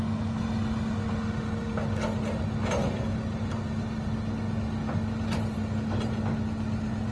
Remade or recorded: recorded